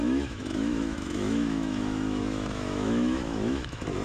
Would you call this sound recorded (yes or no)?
no